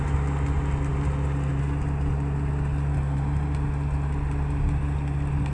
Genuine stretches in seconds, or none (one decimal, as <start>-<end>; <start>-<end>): 0.0-5.5